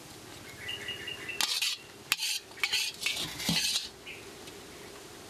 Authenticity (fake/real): real